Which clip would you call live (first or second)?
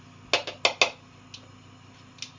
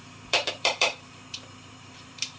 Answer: first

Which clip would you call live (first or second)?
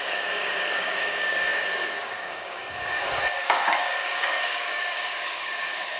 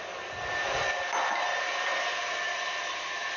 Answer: second